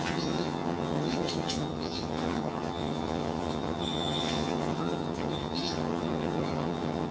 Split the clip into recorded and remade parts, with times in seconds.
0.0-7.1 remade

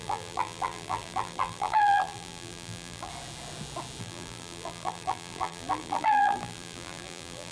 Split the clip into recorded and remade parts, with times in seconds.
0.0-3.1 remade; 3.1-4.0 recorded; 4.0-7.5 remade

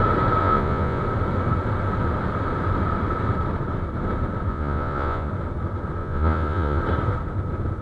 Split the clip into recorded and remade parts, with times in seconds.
0.0-0.4 recorded; 0.4-1.0 remade; 1.0-4.5 recorded; 4.5-5.3 remade; 5.3-6.0 recorded; 6.0-6.8 remade; 6.8-7.8 recorded